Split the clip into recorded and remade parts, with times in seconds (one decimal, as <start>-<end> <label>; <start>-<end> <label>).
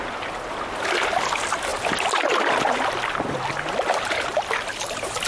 0.0-5.3 recorded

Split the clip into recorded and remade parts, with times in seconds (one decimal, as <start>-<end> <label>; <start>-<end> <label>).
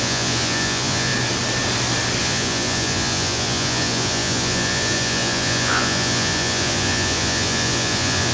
0.0-1.1 remade; 1.1-2.2 recorded; 2.2-8.3 remade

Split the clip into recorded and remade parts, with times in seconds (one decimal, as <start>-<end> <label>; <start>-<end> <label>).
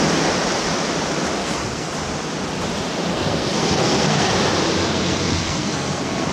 0.0-1.4 recorded; 1.4-1.9 remade; 1.9-3.1 recorded; 3.1-4.3 remade; 4.3-4.8 recorded; 4.8-6.3 remade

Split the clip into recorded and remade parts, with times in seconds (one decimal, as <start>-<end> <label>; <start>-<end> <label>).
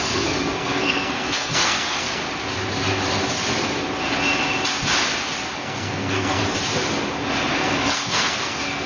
0.0-2.2 remade; 2.2-5.5 recorded; 5.5-6.4 remade; 6.4-7.5 recorded; 7.5-8.9 remade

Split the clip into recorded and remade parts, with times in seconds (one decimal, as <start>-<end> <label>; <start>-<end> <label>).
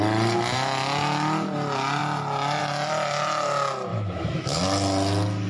0.0-3.9 recorded; 3.9-4.6 remade; 4.6-5.5 recorded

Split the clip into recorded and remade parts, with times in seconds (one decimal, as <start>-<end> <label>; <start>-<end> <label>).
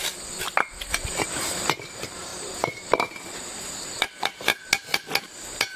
0.0-2.3 remade; 2.3-3.6 recorded; 3.6-4.5 remade; 4.5-5.2 recorded; 5.2-5.8 remade